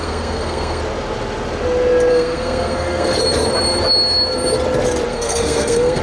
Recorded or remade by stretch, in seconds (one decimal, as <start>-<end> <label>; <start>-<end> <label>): 0.0-0.8 remade; 0.8-2.1 recorded; 2.1-3.2 remade; 3.2-5.1 recorded; 5.1-6.0 remade